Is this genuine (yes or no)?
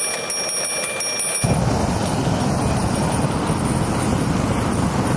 yes